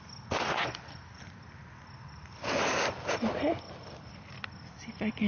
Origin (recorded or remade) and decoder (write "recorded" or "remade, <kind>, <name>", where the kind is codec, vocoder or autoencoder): recorded